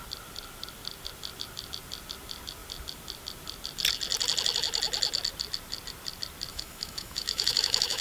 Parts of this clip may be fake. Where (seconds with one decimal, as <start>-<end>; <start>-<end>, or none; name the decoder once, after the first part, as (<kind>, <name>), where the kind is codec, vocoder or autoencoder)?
6.5-8.0 (autoencoder, DAC-VAE)